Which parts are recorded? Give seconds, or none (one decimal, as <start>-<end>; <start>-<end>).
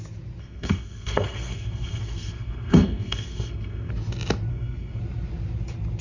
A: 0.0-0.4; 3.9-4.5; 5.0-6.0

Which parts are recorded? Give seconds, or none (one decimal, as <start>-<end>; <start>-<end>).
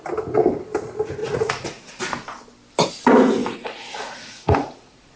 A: 0.0-1.2; 2.0-3.4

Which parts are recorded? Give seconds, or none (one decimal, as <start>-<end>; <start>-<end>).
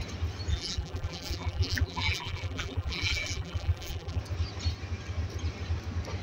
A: 0.0-0.5; 4.2-6.2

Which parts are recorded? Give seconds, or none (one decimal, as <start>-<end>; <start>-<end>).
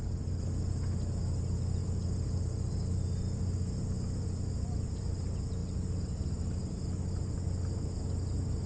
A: 0.0-8.7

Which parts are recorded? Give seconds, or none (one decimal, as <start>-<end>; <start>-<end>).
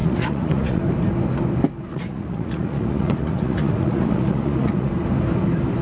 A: 0.8-1.9; 4.9-5.8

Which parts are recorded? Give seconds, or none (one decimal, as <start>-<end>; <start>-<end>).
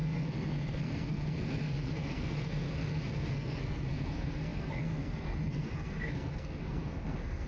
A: none